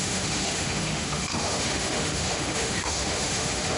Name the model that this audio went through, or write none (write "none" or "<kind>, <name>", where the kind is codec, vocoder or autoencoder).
autoencoder, DAC-VAE